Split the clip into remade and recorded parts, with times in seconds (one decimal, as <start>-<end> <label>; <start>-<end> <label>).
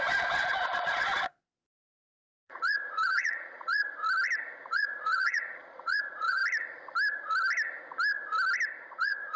0.0-3.8 remade; 3.8-4.7 recorded; 4.7-6.4 remade; 6.4-8.9 recorded; 8.9-9.4 remade